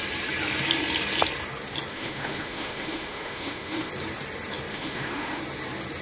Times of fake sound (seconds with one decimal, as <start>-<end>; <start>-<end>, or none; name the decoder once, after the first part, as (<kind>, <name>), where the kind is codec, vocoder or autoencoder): 1.9-3.9 (autoencoder, DAC-VAE); 4.7-5.4

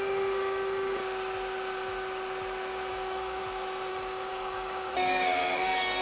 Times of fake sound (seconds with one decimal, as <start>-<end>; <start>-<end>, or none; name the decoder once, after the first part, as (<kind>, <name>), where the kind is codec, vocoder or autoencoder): 0.0-1.0 (codec, DAC); 2.9-3.4; 3.9-6.0

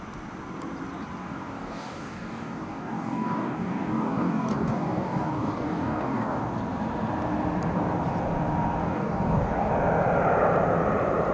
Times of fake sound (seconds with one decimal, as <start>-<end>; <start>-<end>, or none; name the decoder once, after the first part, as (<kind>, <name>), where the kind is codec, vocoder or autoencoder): 1.2-6.4 (codec, DAC); 8.8-9.7

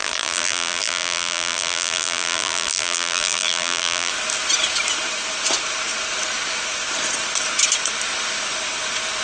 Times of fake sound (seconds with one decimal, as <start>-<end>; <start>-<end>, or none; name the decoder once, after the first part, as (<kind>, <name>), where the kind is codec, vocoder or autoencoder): 0.0-4.1 (vocoder, BigVGAN v2)

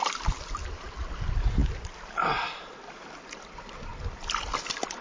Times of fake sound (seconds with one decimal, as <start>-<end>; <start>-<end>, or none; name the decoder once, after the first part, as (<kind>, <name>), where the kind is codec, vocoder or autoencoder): none

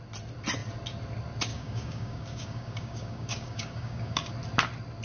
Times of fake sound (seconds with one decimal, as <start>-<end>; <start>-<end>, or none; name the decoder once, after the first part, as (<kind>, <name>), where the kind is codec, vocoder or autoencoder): 1.5-4.3 (codec, DAC)